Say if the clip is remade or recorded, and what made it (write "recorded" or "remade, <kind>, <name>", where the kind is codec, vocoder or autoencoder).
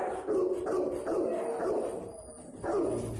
recorded